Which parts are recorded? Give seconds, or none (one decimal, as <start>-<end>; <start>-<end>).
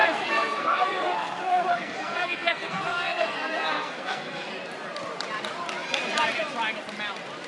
4.5-7.5